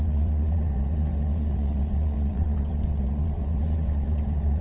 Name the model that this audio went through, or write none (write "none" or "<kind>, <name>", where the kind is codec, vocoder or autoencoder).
vocoder, WaveNeXt